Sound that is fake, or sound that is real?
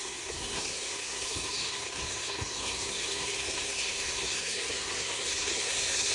fake